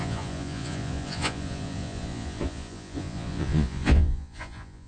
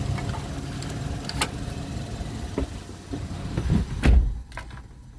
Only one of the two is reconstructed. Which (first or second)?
first